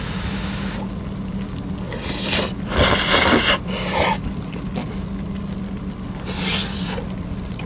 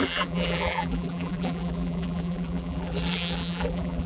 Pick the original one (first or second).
first